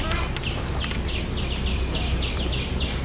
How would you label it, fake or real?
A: real